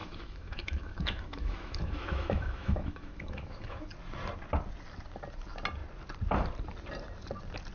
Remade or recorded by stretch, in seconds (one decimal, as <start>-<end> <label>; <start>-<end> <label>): 0.0-3.9 remade; 3.9-7.7 recorded